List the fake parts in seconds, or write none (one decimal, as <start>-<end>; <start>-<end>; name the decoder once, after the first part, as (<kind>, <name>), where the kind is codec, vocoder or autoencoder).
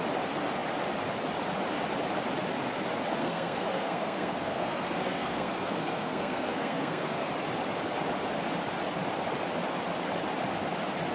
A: 3.2-7.3 (codec, SNAC)